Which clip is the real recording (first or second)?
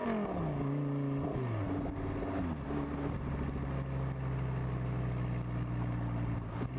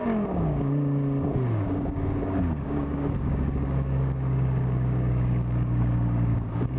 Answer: first